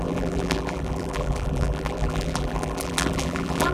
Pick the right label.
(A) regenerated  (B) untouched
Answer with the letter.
A